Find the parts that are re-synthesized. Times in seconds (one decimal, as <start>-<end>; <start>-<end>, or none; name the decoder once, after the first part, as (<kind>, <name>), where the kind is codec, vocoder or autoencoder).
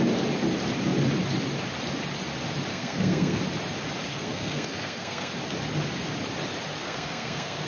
2.7-3.4 (codec, SNAC); 4.1-5.3; 6.8-7.7